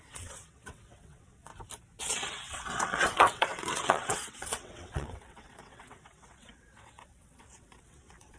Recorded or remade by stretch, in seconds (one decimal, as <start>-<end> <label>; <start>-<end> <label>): 0.0-1.5 remade; 1.5-2.0 recorded; 2.0-8.4 remade

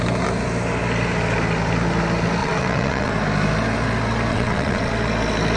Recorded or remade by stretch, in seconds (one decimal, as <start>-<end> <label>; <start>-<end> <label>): 0.0-2.4 recorded; 2.4-3.1 remade; 3.1-4.3 recorded; 4.3-4.9 remade; 4.9-5.6 recorded